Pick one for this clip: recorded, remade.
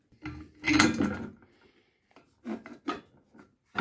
recorded